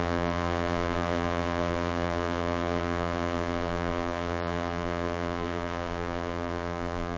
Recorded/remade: remade